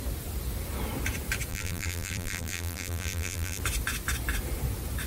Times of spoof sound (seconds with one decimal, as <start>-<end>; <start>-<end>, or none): 1.5-3.6